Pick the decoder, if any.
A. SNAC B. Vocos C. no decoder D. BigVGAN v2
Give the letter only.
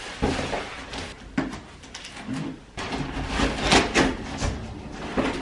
C